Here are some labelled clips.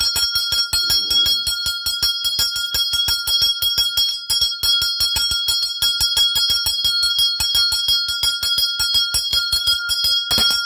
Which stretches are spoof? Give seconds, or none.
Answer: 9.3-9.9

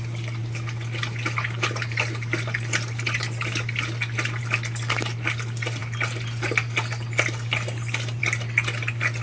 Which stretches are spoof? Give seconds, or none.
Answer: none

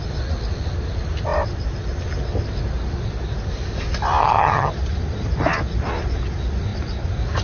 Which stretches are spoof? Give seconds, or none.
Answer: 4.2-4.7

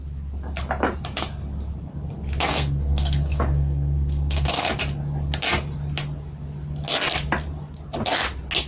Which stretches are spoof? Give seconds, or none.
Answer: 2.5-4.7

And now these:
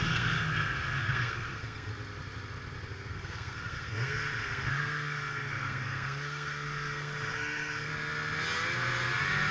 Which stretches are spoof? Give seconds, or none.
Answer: 0.0-1.9; 3.1-7.9

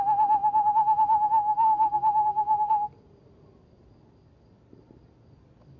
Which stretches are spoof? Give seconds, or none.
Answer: 0.4-2.7

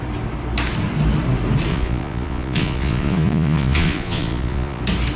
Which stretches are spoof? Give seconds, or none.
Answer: 1.7-4.8

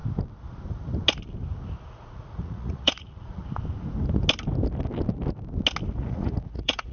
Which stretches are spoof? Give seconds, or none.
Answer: 1.9-3.4; 6.0-6.9